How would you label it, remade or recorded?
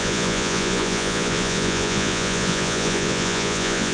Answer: remade